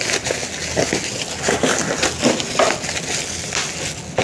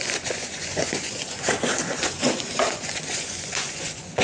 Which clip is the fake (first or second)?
second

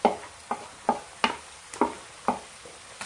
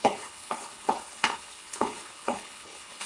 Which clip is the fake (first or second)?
second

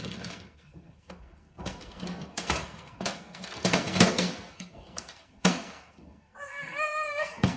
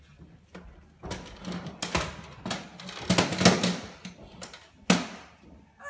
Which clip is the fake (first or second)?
first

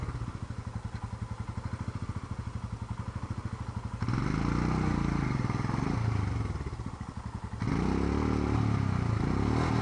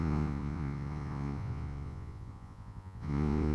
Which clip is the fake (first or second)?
second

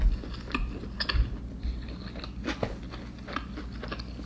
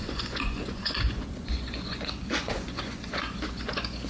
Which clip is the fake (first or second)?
second